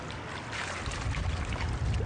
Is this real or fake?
real